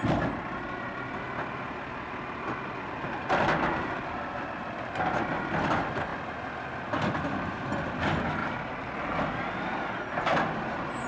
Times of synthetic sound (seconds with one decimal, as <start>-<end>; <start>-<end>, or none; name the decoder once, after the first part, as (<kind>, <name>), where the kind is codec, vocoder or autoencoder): none